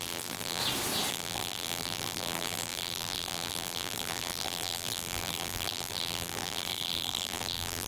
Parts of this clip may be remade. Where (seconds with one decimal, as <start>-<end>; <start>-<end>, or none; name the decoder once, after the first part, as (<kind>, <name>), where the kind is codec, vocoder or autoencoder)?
0.0-0.6 (vocoder, BigVGAN v2); 1.1-7.9